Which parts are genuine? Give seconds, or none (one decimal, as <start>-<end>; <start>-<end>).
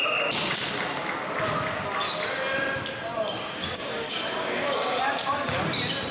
0.0-3.6; 5.0-6.1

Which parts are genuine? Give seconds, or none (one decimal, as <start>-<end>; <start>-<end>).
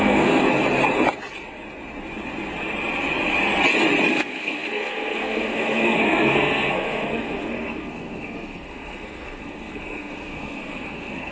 0.4-4.1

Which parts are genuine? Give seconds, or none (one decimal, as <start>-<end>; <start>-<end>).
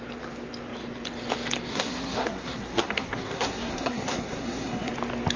0.0-1.7; 4.9-5.4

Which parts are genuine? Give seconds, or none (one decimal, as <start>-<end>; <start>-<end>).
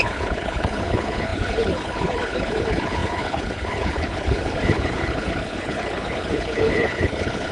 none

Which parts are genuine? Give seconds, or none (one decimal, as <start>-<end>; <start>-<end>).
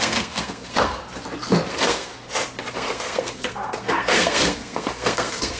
1.0-1.7; 2.1-2.7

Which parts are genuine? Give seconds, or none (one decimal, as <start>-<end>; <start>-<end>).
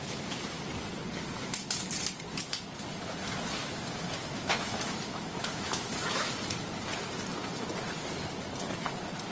0.0-3.6; 6.3-9.3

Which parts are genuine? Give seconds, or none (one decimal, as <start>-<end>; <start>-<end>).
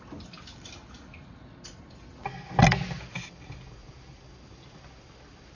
0.0-5.5